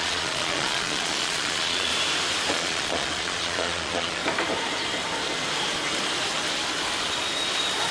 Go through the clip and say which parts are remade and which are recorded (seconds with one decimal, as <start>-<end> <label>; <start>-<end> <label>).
0.0-1.9 remade; 1.9-2.5 recorded; 2.5-4.2 remade; 4.2-7.9 recorded